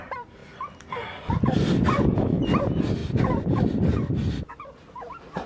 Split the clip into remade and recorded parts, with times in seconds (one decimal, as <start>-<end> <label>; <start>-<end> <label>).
0.0-5.5 recorded